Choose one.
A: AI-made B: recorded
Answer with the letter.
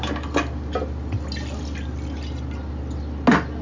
B